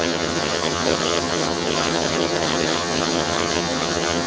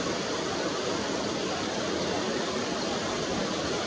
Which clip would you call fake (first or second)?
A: first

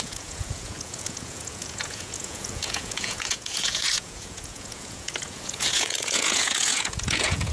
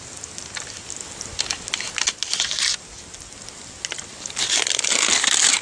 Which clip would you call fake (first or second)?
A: first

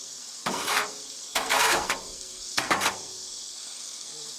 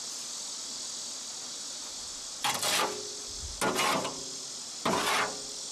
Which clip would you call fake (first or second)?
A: first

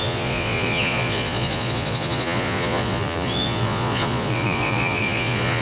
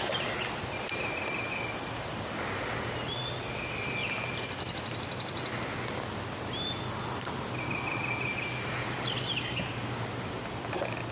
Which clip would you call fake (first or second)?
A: first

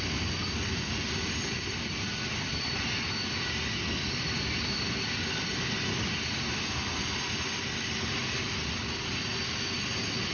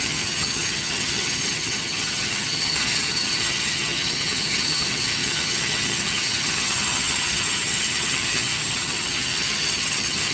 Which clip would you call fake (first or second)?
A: second